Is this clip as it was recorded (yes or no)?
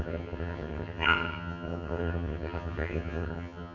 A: no